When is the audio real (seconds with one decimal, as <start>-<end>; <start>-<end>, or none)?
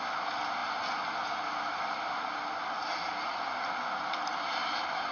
0.0-5.1